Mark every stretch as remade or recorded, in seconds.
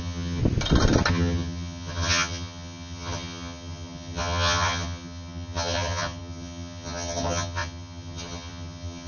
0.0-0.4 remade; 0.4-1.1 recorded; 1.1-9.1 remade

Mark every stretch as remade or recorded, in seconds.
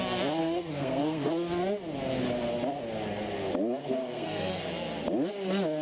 0.0-0.4 recorded; 0.4-1.3 remade; 1.3-3.8 recorded; 3.8-4.6 remade; 4.6-5.8 recorded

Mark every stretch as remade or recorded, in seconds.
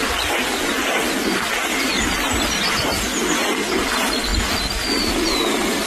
0.0-5.9 recorded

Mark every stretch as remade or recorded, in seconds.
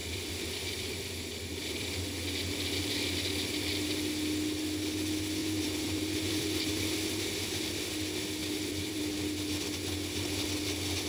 0.0-2.1 remade; 2.1-5.4 recorded; 5.4-6.7 remade; 6.7-8.4 recorded; 8.4-9.0 remade; 9.0-11.1 recorded